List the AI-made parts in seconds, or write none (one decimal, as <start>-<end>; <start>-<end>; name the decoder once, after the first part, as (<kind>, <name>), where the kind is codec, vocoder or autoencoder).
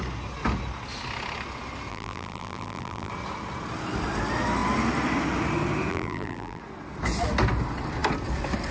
1.9-3.1 (vocoder, BigVGAN v2); 5.9-6.6